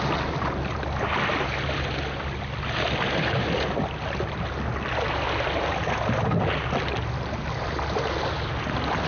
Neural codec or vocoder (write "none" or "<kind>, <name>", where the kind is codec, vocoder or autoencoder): none